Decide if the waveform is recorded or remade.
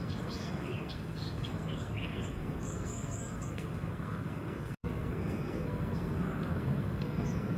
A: remade